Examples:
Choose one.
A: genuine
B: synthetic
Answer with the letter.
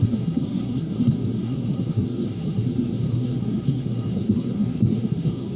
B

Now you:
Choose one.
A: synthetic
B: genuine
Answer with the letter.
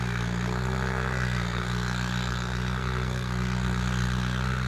A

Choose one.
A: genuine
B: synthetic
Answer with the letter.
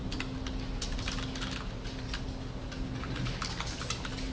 A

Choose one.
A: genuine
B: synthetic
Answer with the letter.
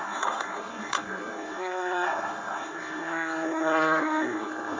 B